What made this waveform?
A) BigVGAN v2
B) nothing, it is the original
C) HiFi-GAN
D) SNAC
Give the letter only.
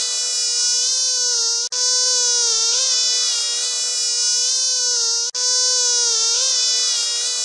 B